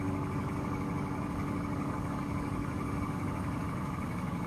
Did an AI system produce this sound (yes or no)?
yes